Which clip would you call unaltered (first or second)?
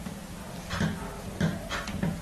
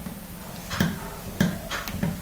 first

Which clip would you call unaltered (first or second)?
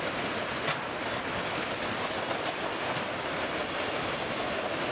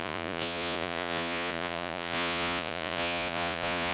first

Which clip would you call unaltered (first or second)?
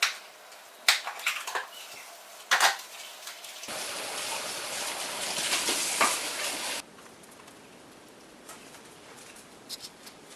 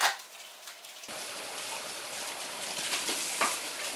first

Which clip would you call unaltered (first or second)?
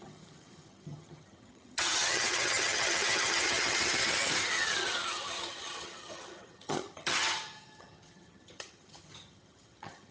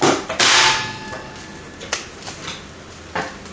second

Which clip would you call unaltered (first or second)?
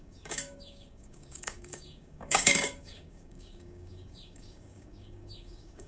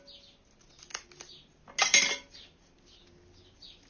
second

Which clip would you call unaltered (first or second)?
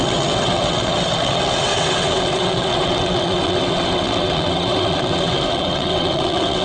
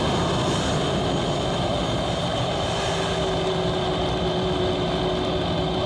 second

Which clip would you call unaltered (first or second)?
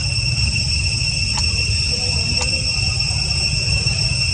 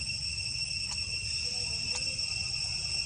second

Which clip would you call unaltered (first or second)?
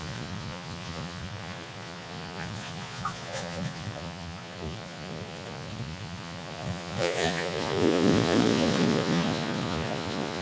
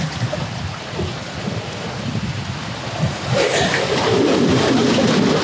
second